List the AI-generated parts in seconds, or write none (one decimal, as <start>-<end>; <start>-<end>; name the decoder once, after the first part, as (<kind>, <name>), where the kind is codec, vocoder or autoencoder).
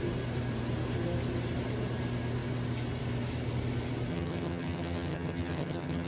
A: 4.1-6.1 (vocoder, HiFi-GAN)